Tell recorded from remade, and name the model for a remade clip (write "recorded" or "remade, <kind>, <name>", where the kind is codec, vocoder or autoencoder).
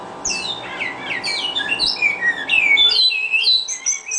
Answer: recorded